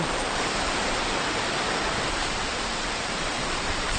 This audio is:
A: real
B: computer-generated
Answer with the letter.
B